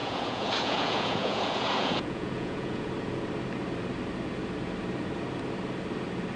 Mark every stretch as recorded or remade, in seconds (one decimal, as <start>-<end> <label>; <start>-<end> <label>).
0.0-2.9 remade; 2.9-6.4 recorded